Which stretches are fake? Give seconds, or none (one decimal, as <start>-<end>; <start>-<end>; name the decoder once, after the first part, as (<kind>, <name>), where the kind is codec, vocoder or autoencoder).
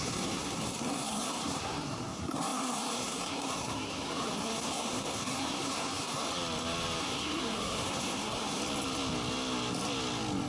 0.0-6.3 (codec, SNAC); 7.0-8.6